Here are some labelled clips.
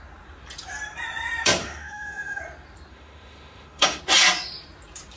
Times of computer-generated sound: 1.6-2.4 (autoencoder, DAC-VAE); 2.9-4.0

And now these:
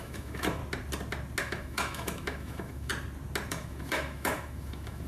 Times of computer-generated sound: 0.0-0.6 (autoencoder, DAC-VAE); 1.4-2.9; 3.5-5.1

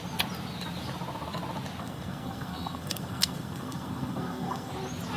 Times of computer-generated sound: 1.8-4.7 (codec, SNAC)

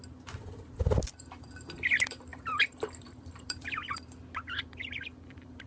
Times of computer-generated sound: 1.1-5.7 (vocoder, BigVGAN v2)

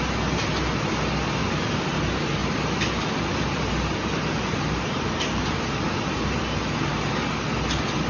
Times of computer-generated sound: 1.4-2.0 (vocoder, BigVGAN v2); 2.4-6.4

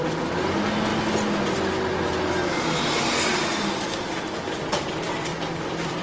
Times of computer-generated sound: none

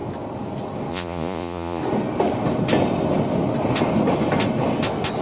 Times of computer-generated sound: 0.9-1.8 (vocoder, Vocos)

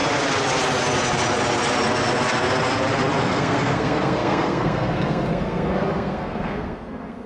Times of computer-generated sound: 3.2-7.3 (codec, SNAC)